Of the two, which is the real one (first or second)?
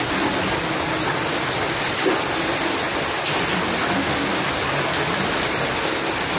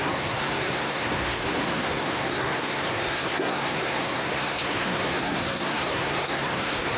first